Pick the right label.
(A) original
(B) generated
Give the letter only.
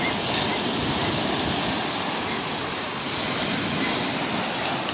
A